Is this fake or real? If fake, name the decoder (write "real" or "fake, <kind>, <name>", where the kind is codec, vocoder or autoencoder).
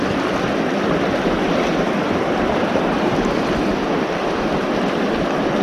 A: fake, vocoder, BigVGAN v2